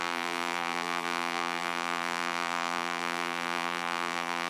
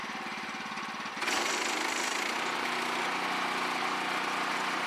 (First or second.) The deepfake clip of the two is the first